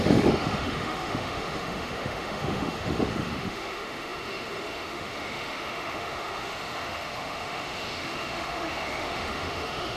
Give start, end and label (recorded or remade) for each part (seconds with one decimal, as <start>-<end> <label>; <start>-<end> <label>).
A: 0.0-10.0 remade